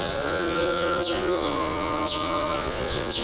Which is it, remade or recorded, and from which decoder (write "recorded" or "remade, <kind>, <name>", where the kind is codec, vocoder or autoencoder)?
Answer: remade, vocoder, Vocos